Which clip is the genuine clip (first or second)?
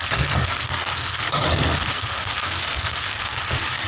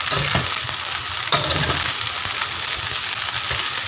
second